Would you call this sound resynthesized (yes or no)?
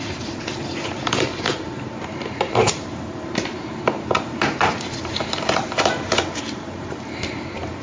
yes